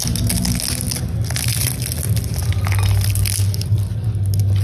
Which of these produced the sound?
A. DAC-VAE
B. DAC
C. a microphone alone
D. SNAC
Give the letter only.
C